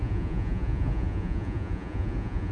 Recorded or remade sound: remade